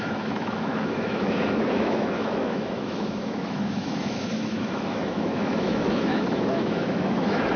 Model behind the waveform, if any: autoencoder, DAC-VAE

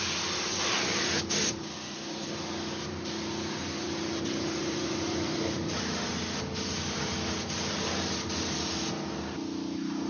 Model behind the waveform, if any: none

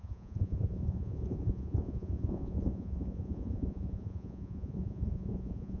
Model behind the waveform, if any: vocoder, Vocos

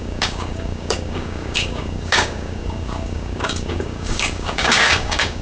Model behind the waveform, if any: codec, DAC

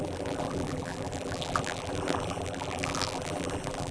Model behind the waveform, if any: vocoder, BigVGAN v2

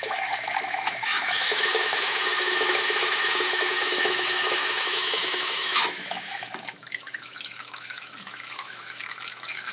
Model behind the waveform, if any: autoencoder, DAC-VAE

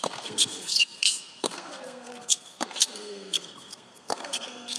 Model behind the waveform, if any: codec, SNAC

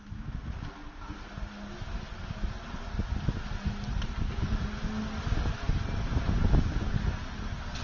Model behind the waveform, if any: none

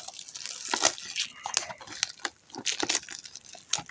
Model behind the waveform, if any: none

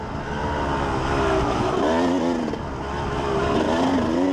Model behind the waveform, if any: none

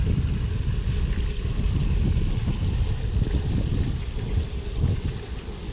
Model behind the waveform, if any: none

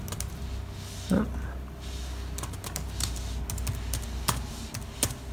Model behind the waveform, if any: none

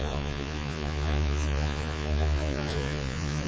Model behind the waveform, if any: vocoder, Vocos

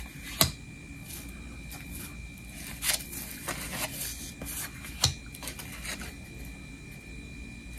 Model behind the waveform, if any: none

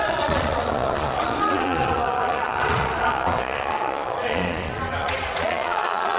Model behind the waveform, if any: vocoder, Vocos